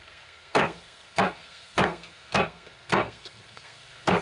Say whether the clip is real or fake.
fake